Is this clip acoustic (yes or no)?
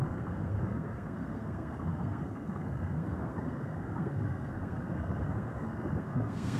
no